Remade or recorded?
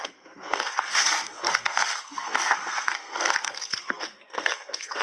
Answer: remade